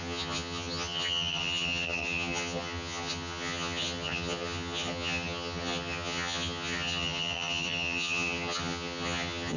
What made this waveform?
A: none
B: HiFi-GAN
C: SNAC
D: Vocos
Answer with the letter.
B